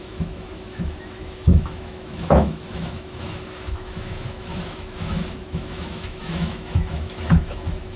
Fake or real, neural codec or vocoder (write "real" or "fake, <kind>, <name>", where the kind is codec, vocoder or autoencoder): fake, autoencoder, DAC-VAE